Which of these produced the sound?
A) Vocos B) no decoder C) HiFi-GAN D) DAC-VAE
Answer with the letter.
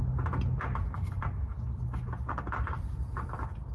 B